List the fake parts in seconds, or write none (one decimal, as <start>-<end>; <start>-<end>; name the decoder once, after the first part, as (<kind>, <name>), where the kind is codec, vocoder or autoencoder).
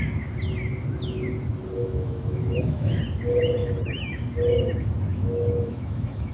1.8-3.0 (autoencoder, DAC-VAE); 3.6-4.2; 5.1-6.3